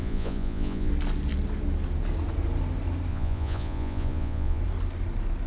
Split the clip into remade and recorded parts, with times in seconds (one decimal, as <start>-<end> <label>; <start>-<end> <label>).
0.0-0.9 remade; 0.9-3.1 recorded; 3.1-4.6 remade; 4.6-5.5 recorded